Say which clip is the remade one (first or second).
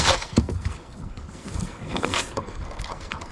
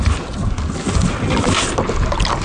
first